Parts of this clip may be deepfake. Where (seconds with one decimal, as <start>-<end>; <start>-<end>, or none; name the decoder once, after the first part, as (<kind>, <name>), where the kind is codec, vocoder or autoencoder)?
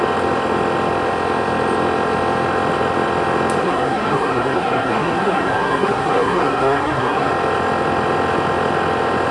3.6-7.3 (codec, SNAC)